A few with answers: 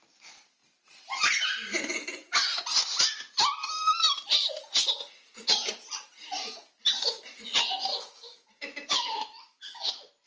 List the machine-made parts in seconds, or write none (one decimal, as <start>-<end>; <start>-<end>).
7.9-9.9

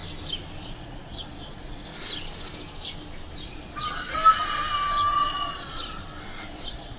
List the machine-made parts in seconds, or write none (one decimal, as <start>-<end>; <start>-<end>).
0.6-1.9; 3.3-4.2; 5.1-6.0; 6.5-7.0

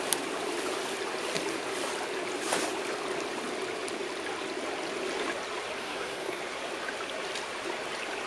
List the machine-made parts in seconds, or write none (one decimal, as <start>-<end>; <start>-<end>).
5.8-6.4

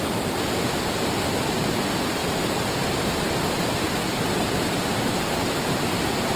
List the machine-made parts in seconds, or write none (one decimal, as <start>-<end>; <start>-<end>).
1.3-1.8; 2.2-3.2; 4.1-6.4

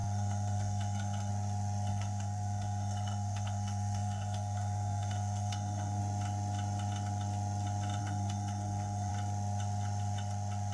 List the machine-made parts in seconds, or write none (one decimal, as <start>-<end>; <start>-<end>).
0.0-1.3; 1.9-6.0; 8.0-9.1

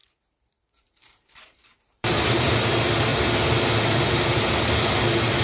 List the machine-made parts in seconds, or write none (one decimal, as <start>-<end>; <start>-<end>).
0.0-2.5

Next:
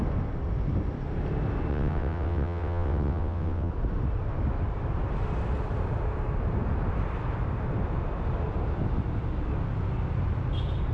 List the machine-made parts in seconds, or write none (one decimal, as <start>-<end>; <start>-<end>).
1.7-3.7